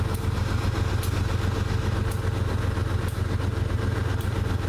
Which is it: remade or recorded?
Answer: recorded